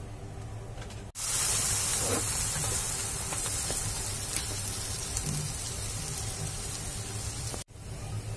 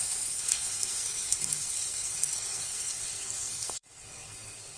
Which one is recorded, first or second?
first